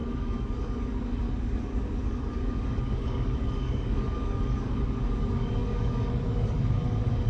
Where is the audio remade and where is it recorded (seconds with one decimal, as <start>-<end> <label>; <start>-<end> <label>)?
0.0-7.3 remade